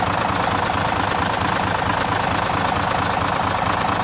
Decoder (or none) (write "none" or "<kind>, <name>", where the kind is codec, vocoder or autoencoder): none